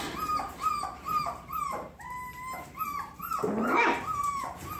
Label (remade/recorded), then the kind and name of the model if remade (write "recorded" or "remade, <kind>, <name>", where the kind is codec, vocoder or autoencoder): remade, vocoder, BigVGAN v2